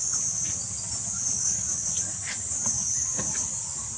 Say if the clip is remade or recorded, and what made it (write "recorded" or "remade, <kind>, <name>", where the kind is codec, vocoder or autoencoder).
recorded